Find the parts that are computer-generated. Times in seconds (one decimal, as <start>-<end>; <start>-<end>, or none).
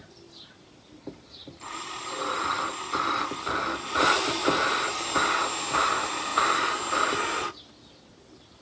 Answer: none